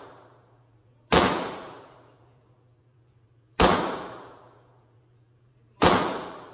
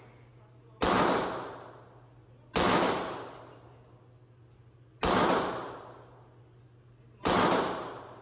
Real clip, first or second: second